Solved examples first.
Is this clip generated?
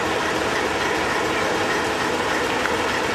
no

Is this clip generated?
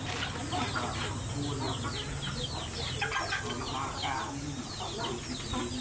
no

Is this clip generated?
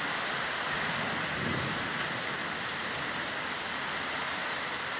no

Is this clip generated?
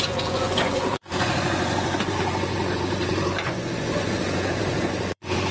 yes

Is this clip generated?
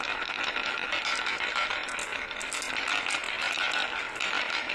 no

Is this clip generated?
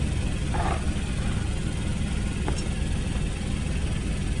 no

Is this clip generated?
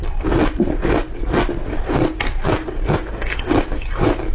no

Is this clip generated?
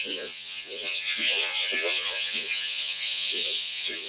yes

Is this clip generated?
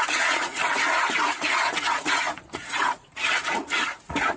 yes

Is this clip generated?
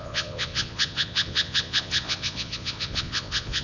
yes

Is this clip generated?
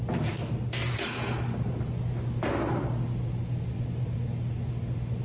no